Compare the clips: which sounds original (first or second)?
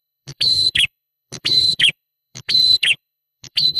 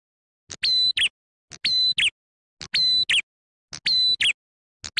second